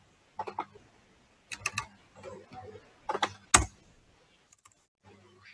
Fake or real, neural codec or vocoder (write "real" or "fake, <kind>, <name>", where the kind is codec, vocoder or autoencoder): real